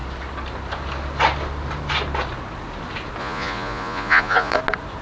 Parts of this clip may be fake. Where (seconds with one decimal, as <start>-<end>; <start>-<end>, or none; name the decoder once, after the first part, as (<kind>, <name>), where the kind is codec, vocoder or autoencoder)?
3.2-4.6 (vocoder, Vocos)